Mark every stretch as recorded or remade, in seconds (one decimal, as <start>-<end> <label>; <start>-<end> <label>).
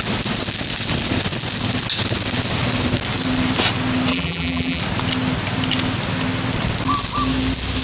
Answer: 0.0-4.1 recorded; 4.1-4.8 remade; 4.8-7.8 recorded